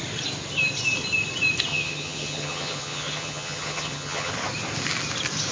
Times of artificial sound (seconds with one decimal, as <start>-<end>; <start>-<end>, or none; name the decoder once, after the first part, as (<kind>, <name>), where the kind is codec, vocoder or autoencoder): 1.7-4.3 (vocoder, HiFi-GAN)